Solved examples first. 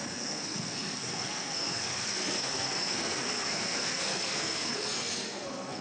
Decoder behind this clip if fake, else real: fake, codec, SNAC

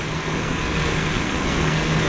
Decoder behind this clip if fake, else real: fake, codec, SNAC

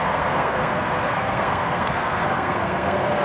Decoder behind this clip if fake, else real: fake, codec, SNAC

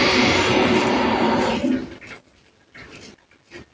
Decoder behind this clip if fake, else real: real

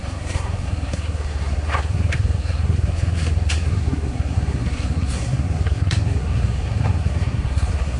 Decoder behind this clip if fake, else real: fake, codec, SNAC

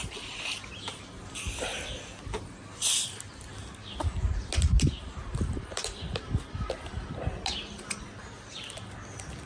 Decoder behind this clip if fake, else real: real